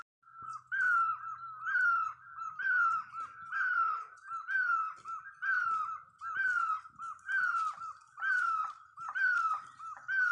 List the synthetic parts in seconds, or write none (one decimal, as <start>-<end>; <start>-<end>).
none